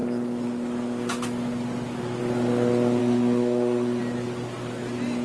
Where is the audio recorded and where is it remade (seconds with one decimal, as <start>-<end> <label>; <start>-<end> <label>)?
0.0-3.0 recorded; 3.0-4.0 remade; 4.0-5.2 recorded